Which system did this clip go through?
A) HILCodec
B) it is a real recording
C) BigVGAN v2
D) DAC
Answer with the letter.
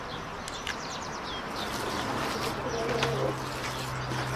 B